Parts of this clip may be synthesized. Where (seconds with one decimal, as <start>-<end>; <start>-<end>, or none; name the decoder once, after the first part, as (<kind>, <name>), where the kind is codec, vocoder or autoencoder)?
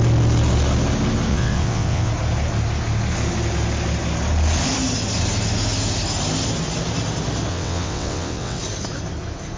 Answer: 1.3-2.1 (vocoder, WaveNeXt); 7.5-8.6